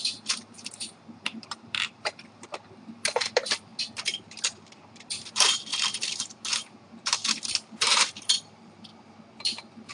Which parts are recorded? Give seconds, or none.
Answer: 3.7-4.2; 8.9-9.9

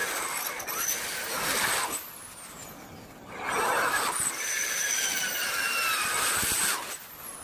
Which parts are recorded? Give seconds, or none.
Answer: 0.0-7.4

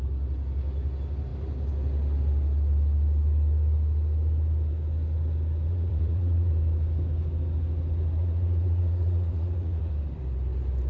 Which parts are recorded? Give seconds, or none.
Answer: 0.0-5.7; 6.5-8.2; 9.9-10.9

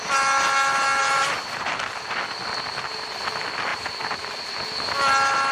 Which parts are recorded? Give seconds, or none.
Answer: 0.0-1.0; 2.1-3.7; 4.2-5.5